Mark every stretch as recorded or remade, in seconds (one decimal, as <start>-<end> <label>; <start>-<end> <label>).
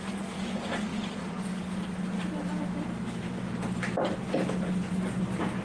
0.0-0.9 recorded; 0.9-1.4 remade; 1.4-5.6 recorded